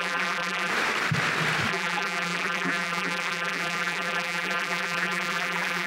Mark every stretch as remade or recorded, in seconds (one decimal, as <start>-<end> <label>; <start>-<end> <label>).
0.0-0.7 remade; 0.7-1.7 recorded; 1.7-5.9 remade